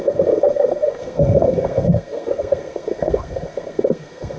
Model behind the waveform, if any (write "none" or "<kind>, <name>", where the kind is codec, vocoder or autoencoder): codec, SNAC